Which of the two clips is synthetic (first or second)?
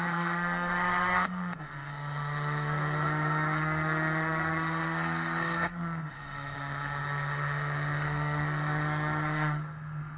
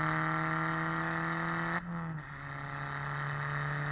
first